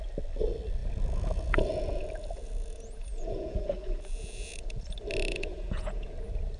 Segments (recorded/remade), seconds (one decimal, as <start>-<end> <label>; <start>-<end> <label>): 0.0-0.8 recorded; 0.8-4.8 remade; 4.8-5.3 recorded; 5.3-6.1 remade; 6.1-6.6 recorded